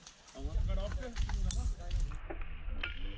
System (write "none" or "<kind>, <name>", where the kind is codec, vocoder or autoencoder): none